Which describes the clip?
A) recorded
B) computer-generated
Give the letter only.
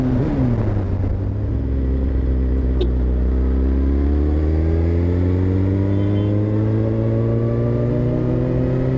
A